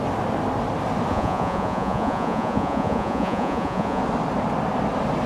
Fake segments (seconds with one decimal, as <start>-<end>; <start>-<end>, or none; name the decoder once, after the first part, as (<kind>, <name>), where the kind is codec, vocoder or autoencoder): 1.1-4.0 (vocoder, Vocos)